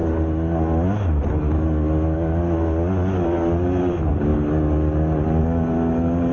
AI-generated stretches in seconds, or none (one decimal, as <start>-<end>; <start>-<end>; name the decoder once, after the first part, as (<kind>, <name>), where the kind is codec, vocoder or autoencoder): none